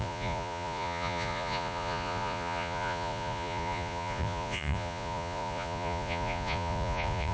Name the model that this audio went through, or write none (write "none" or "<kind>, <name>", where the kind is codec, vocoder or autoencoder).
vocoder, Vocos